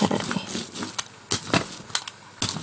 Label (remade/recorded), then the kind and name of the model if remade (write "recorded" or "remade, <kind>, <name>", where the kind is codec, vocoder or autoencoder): recorded